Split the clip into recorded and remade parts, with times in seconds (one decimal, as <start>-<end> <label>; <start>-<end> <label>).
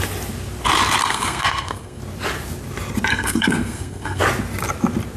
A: 0.0-1.0 recorded; 1.0-2.0 remade; 2.0-3.1 recorded; 3.1-4.2 remade; 4.2-5.2 recorded